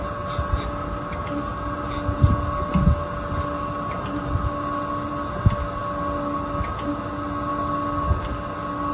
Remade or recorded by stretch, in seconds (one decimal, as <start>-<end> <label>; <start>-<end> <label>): 0.0-8.9 recorded